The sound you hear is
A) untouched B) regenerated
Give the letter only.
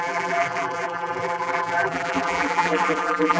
B